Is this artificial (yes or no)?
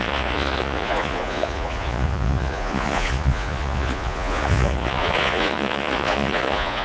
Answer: yes